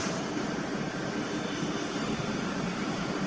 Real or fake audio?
real